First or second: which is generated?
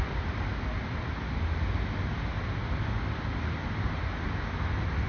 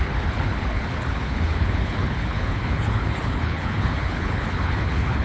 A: second